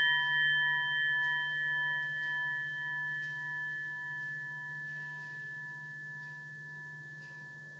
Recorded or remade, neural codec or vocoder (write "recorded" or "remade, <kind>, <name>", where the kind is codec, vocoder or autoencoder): recorded